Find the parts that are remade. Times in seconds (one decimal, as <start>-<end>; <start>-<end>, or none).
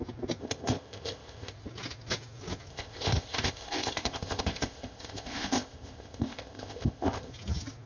0.4-1.5; 2.7-7.3